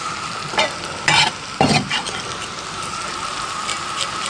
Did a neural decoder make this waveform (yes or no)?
no